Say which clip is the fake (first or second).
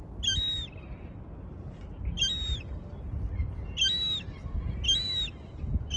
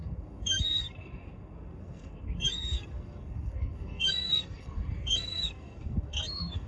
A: second